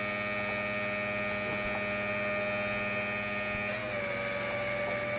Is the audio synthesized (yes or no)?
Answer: no